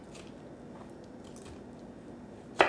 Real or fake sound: real